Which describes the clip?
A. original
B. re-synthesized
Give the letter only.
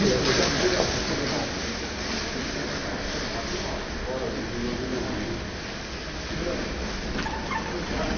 A